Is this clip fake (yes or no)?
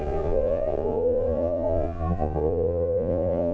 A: yes